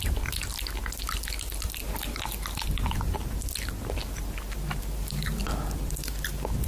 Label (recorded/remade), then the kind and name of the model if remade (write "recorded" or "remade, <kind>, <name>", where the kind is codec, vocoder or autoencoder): recorded